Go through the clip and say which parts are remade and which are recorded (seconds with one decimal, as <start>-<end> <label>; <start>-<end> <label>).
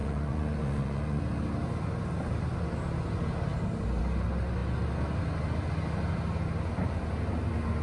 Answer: 0.0-1.2 remade; 1.2-7.8 recorded